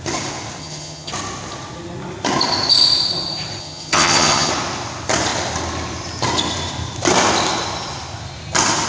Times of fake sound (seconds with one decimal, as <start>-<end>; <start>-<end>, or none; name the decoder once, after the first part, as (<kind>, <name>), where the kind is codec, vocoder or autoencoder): 0.6-1.1 (vocoder, HiFi-GAN); 3.6-4.5